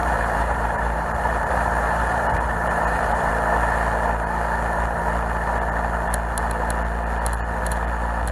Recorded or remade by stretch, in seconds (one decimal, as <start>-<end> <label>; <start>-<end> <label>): 0.0-3.3 remade; 3.3-8.3 recorded